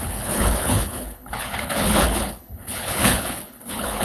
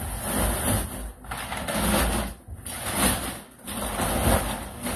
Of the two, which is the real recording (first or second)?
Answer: second